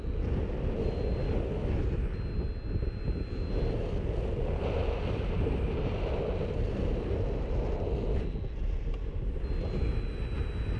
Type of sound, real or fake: real